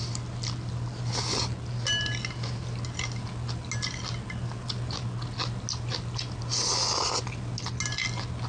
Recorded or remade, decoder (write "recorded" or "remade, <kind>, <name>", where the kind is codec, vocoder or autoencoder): recorded